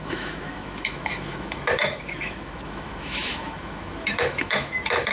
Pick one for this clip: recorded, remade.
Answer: remade